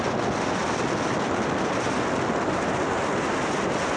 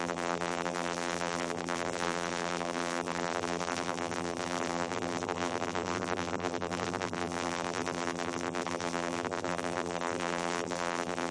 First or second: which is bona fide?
first